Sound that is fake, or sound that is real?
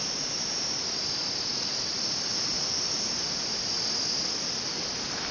real